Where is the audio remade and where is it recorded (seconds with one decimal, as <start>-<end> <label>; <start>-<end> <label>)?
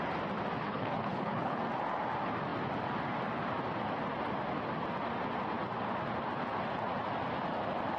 0.0-0.6 recorded; 0.6-1.6 remade; 1.6-8.0 recorded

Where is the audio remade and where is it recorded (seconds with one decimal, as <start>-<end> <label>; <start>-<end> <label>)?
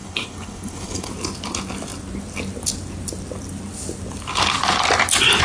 0.0-1.1 remade; 1.1-5.4 recorded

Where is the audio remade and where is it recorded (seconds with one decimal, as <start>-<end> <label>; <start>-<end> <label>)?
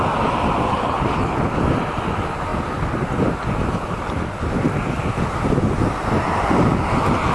0.0-0.7 recorded; 0.7-1.6 remade; 1.6-7.3 recorded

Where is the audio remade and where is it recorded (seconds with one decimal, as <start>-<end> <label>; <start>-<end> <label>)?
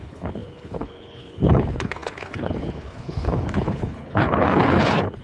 0.0-5.2 remade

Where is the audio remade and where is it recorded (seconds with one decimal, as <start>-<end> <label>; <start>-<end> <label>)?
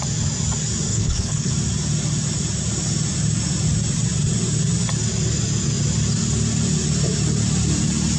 0.0-0.9 recorded; 0.9-1.5 remade; 1.5-8.2 recorded